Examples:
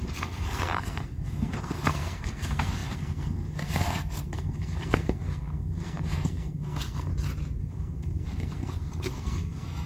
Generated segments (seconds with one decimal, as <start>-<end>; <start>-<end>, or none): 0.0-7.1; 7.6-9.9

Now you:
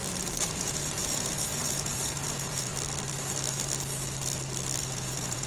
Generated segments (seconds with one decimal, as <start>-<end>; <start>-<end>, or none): 0.6-2.7; 4.8-5.5

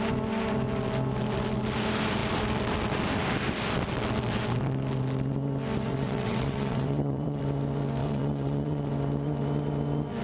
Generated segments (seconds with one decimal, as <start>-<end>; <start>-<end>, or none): 5.9-7.4; 8.0-8.9

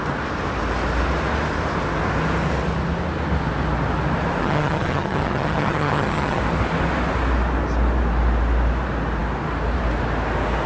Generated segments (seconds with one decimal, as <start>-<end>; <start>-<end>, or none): 4.4-6.4

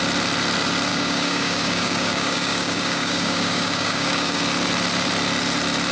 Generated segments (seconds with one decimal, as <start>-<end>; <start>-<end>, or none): 0.9-4.4

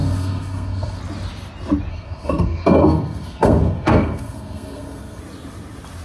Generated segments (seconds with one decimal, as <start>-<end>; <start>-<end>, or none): 0.0-1.0; 1.9-5.2